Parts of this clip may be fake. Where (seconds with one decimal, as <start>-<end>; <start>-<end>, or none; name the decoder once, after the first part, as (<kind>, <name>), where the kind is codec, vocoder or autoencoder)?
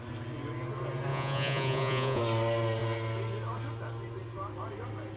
1.1-2.2 (vocoder, Vocos)